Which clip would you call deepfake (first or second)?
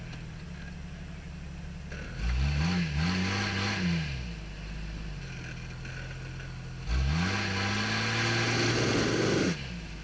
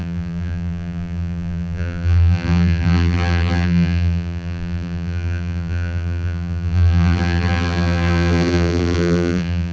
second